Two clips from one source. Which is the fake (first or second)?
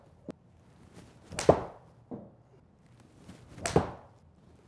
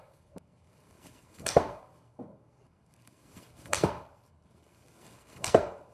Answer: second